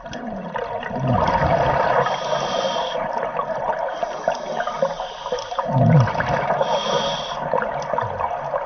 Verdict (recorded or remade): recorded